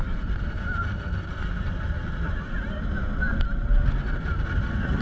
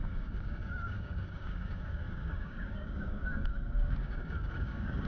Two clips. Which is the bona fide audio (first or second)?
first